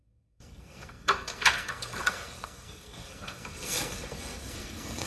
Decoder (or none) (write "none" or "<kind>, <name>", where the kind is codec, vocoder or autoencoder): codec, SNAC